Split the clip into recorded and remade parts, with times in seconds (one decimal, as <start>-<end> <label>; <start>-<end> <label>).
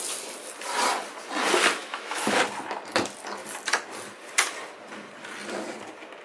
0.0-1.8 recorded; 1.8-2.4 remade; 2.4-6.2 recorded